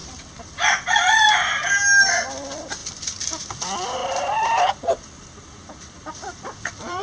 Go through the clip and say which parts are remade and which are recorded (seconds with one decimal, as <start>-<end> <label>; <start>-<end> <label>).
0.0-1.3 remade; 1.3-4.0 recorded; 4.0-7.0 remade